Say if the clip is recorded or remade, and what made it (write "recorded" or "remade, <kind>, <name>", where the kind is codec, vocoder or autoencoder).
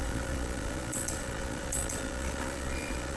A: remade, vocoder, Vocos